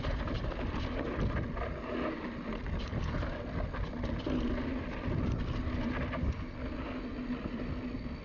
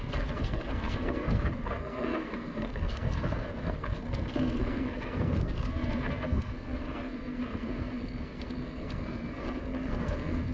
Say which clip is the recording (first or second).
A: first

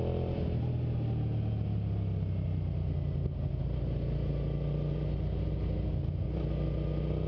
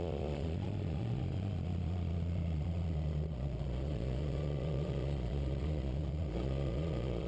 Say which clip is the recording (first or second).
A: first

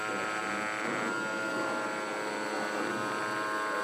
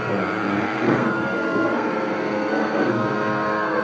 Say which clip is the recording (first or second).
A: first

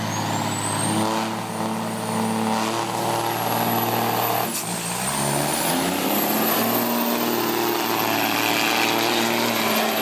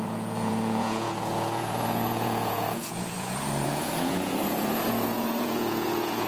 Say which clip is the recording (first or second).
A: first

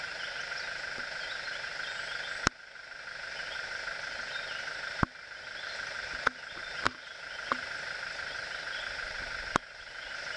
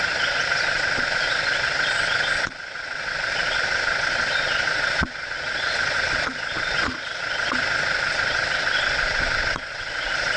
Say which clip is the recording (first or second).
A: first